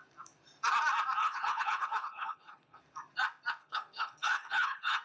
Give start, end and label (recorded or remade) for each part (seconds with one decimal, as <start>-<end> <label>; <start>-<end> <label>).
0.0-1.2 recorded; 1.2-2.8 remade; 2.8-3.6 recorded; 3.6-5.0 remade